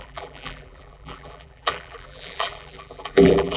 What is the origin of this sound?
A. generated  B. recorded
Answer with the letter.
A